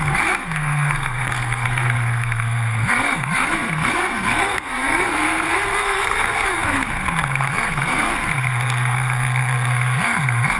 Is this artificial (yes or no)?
yes